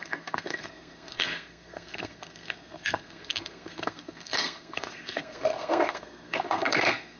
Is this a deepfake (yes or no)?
yes